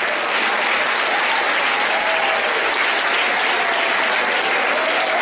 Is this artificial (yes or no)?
no